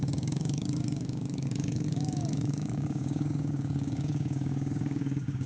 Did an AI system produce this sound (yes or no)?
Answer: yes